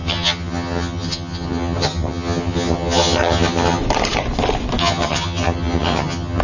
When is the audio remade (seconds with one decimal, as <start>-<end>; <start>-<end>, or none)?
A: 0.0-3.8; 4.8-6.4